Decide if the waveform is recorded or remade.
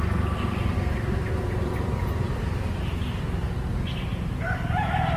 recorded